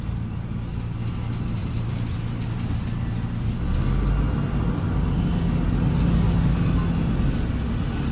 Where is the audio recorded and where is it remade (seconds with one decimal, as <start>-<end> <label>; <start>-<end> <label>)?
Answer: 0.0-8.1 recorded

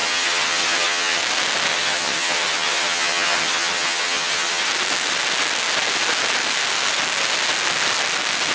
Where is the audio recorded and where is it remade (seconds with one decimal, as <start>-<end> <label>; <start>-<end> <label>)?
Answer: 0.0-1.2 remade; 1.2-1.7 recorded; 1.7-4.7 remade; 4.7-8.5 recorded

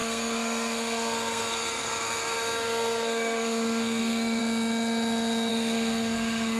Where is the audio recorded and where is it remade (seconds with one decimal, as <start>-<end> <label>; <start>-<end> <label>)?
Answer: 0.0-4.4 remade; 4.4-5.5 recorded; 5.5-6.6 remade